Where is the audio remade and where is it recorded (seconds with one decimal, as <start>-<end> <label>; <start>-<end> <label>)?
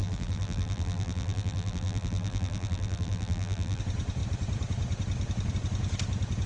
0.0-3.8 remade; 3.8-6.5 recorded